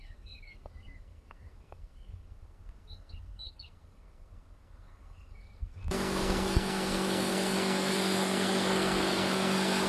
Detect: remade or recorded remade